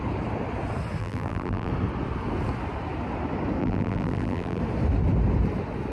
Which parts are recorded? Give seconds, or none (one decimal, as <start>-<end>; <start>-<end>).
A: 0.0-1.0; 1.7-3.6; 4.6-5.9